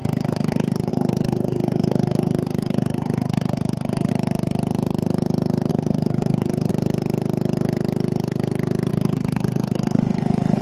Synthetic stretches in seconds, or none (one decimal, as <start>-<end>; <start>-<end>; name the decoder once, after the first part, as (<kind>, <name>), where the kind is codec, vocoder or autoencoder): 0.0-4.1 (codec, SNAC); 5.7-6.7; 8.9-10.6